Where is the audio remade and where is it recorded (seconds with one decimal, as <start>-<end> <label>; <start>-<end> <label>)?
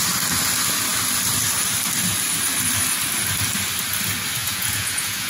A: 0.0-4.4 recorded; 4.4-5.3 remade